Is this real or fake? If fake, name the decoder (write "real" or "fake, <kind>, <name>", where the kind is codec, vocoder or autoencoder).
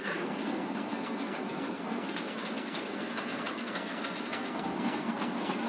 fake, codec, SNAC